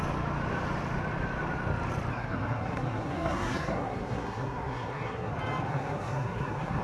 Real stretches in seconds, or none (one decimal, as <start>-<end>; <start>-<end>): 0.0-2.1; 5.3-5.7